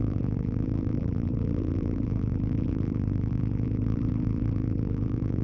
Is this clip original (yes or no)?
no